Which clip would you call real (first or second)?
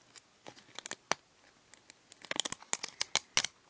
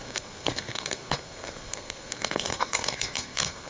first